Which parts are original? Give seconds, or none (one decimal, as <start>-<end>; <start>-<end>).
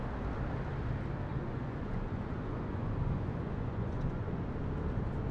0.0-1.3; 4.5-5.3